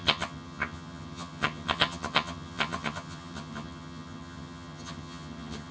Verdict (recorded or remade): remade